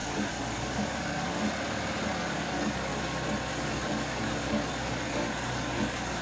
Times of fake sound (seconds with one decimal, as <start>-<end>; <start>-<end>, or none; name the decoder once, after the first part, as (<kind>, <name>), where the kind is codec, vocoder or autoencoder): 0.0-1.3 (codec, DAC); 2.2-2.9; 3.5-6.2